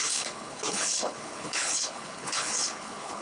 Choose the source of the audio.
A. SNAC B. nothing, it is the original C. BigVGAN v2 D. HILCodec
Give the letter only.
D